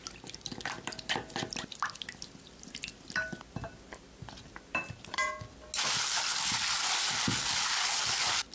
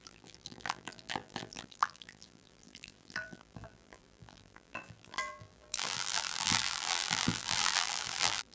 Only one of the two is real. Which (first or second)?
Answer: first